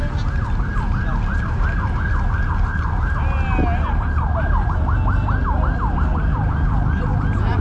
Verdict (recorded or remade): recorded